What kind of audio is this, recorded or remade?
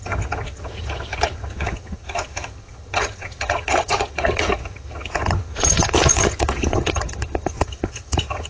remade